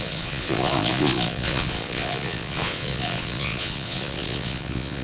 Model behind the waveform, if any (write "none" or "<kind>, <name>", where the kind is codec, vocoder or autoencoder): vocoder, Vocos